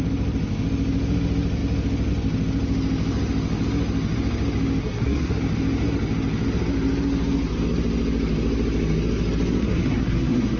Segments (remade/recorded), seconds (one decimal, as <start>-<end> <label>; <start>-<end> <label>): 0.0-4.8 recorded; 4.8-5.4 remade; 5.4-9.6 recorded; 9.6-10.6 remade